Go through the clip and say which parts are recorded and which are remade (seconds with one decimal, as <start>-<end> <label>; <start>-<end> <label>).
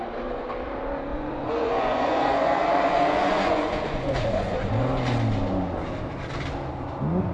0.0-1.1 recorded; 1.1-4.7 remade; 4.7-7.3 recorded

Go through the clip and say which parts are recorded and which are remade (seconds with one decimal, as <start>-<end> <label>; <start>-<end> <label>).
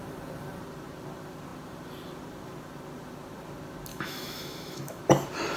0.0-3.9 recorded; 3.9-5.0 remade; 5.0-5.6 recorded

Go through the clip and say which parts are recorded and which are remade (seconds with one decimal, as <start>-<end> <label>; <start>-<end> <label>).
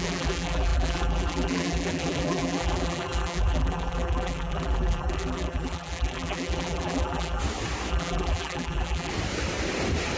0.0-7.4 remade; 7.4-7.9 recorded; 7.9-9.1 remade; 9.1-10.2 recorded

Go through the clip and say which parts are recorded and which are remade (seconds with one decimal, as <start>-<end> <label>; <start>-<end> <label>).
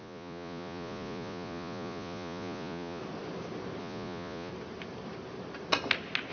0.0-3.0 remade; 3.0-3.8 recorded; 3.8-4.5 remade; 4.5-6.3 recorded